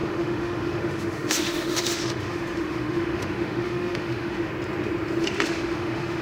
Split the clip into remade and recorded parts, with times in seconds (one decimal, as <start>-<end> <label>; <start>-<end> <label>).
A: 0.0-4.5 remade; 4.5-5.2 recorded; 5.2-6.2 remade